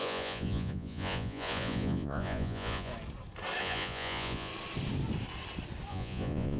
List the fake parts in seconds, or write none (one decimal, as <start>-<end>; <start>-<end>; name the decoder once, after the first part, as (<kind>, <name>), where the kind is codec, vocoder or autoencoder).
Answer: 0.0-2.9 (vocoder, Vocos); 3.6-4.5; 5.9-6.6